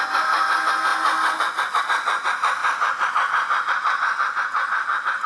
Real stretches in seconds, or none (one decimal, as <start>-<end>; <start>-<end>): 0.0-5.3